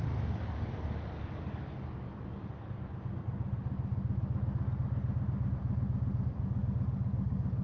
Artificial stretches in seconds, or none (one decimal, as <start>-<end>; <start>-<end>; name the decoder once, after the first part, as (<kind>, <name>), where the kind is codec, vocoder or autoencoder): 0.0-2.9 (codec, DAC); 6.4-7.6